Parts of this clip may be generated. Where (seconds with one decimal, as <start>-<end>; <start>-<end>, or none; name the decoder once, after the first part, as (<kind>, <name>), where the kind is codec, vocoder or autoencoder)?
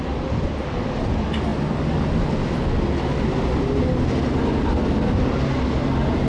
none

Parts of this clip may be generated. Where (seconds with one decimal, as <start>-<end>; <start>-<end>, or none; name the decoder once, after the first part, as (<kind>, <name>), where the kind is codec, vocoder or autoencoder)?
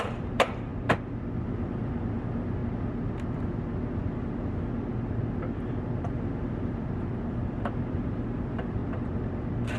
0.0-0.7 (vocoder, BigVGAN v2); 1.6-2.6; 7.6-8.8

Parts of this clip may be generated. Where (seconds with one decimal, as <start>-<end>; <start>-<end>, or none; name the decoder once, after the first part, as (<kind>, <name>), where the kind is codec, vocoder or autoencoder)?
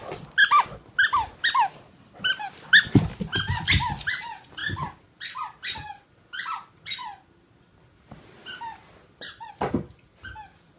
none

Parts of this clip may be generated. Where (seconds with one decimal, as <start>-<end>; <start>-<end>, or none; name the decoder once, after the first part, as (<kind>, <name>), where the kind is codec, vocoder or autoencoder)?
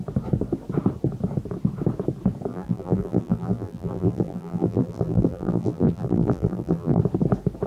2.5-7.0 (vocoder, BigVGAN v2)